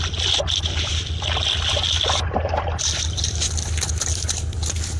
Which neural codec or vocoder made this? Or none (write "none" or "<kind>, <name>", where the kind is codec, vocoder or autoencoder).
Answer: none